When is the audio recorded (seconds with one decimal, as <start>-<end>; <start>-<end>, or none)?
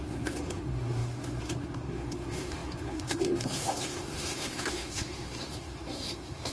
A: none